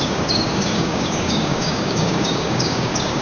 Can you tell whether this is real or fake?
fake